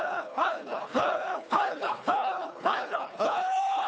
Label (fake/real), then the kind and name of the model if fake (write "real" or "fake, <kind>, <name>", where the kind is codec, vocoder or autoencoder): fake, codec, HILCodec